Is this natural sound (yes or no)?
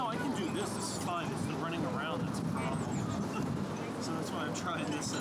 yes